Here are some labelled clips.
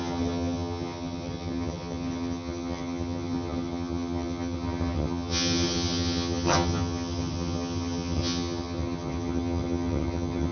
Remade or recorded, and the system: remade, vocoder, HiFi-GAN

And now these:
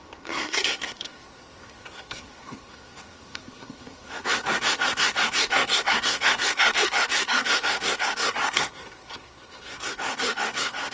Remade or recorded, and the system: remade, codec, SNAC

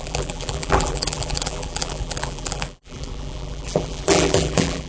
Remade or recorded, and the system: remade, vocoder, BigVGAN v2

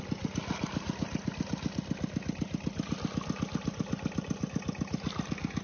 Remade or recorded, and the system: recorded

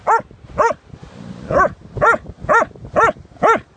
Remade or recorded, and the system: recorded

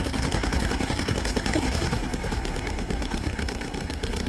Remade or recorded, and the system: remade, codec, SNAC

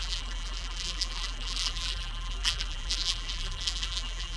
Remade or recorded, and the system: remade, vocoder, BigVGAN v2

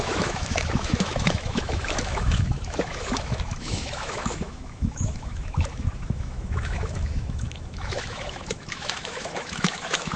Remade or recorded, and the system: remade, autoencoder, DAC-VAE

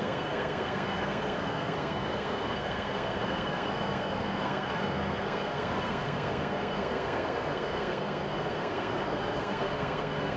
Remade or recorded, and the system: remade, codec, SNAC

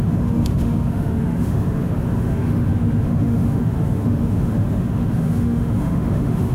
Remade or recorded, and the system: remade, autoencoder, DAC-VAE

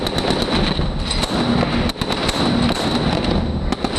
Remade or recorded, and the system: recorded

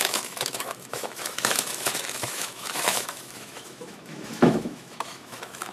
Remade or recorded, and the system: remade, autoencoder, DAC-VAE